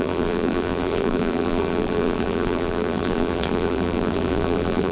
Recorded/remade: remade